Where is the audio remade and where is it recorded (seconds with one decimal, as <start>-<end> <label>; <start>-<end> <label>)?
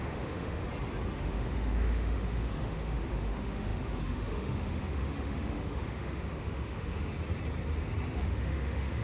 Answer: 0.0-0.6 remade; 0.6-1.2 recorded; 1.2-7.1 remade; 7.1-8.2 recorded; 8.2-9.0 remade